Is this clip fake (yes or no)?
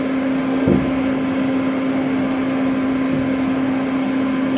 no